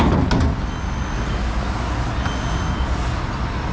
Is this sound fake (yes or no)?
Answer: no